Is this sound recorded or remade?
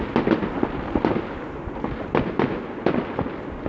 recorded